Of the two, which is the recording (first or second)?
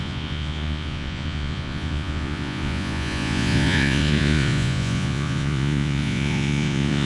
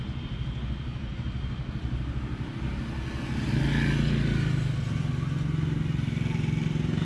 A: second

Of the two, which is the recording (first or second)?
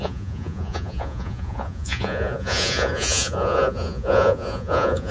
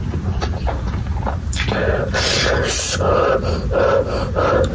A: second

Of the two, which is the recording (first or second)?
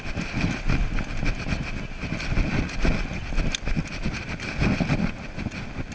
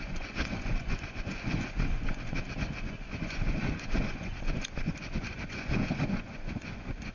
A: first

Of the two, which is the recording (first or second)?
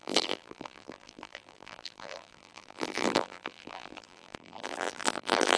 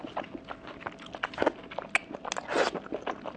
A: second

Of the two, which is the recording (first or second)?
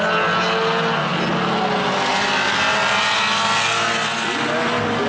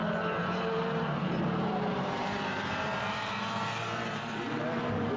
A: first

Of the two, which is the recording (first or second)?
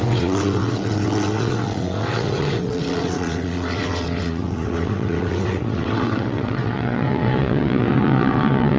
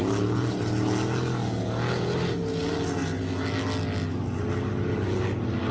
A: second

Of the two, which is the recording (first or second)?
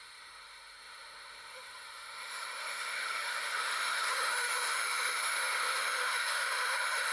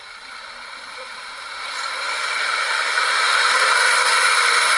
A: second